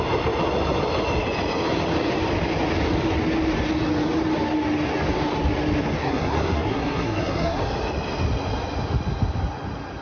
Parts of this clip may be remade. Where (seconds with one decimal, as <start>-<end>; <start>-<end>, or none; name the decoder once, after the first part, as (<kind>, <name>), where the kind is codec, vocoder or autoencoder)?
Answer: 6.0-7.6 (codec, SNAC)